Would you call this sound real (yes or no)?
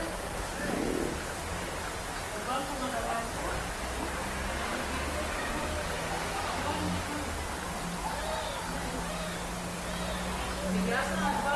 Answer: yes